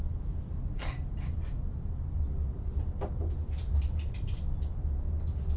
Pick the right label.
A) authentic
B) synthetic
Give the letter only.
A